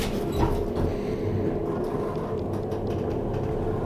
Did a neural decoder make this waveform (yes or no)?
no